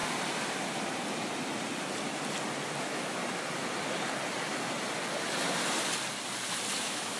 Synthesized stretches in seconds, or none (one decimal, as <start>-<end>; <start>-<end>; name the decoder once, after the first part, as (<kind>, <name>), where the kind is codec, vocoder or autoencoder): 2.8-3.2 (autoencoder, DAC-VAE); 6.8-7.2